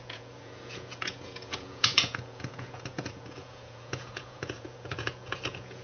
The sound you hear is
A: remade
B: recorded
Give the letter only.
A